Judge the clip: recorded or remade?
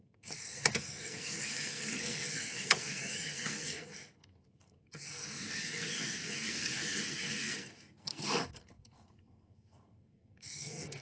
remade